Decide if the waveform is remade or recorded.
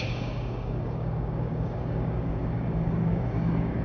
remade